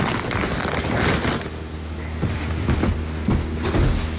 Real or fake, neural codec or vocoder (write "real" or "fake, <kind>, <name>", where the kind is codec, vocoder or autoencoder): real